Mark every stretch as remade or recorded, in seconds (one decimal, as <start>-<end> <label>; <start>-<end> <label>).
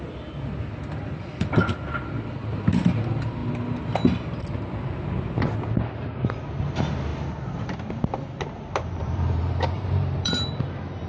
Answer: 0.0-9.0 recorded; 9.0-10.3 remade; 10.3-11.1 recorded